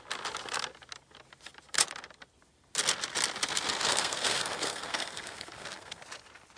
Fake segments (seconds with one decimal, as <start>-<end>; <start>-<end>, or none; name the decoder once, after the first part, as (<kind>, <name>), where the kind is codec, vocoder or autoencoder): 3.9-6.0 (codec, SNAC)

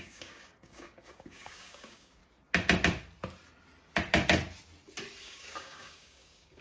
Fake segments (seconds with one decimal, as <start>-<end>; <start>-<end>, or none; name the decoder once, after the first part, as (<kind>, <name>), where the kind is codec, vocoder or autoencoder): 0.0-2.2 (codec, DAC); 5.2-6.6